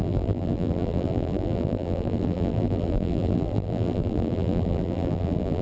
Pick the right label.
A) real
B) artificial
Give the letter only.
B